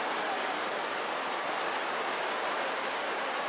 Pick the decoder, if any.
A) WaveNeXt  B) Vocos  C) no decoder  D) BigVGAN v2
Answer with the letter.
C